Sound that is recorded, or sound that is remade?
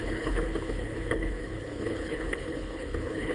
remade